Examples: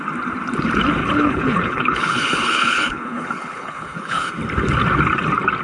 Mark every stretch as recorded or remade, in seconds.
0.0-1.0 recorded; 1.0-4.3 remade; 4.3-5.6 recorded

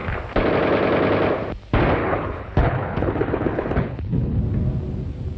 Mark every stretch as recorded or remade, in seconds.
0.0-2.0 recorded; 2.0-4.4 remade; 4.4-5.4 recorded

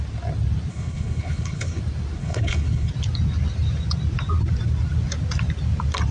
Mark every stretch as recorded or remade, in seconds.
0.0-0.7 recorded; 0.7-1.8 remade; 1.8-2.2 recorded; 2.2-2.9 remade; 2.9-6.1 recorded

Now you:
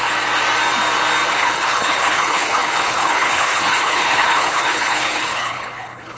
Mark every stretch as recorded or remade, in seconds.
0.0-1.3 recorded; 1.3-6.2 remade

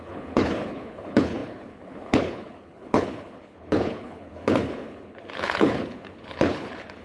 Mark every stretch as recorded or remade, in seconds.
0.0-7.0 remade